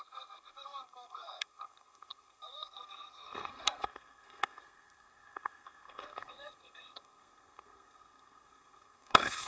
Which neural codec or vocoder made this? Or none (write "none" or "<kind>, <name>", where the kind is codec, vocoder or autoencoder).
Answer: codec, SNAC